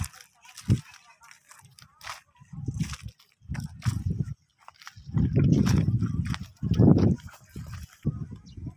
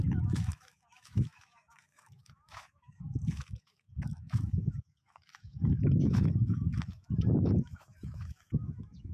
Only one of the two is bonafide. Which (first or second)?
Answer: first